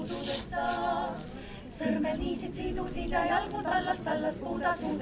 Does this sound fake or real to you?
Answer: real